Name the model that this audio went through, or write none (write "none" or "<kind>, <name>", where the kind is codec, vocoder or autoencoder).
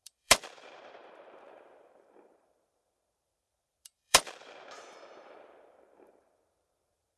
vocoder, BigVGAN v2